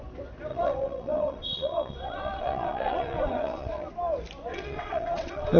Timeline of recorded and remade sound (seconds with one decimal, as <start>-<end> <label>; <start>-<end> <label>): 0.0-0.5 recorded; 0.5-3.9 remade; 3.9-4.5 recorded; 4.5-5.6 remade